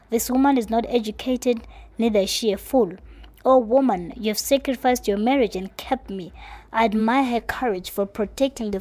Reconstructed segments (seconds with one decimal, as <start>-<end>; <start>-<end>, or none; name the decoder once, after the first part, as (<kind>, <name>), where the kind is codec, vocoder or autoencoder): 7.0-8.8 (autoencoder, DAC-VAE)